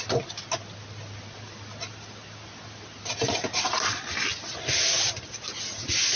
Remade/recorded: recorded